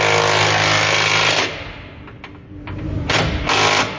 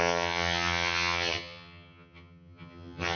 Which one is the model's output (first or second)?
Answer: second